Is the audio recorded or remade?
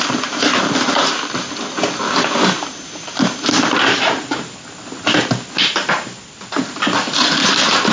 recorded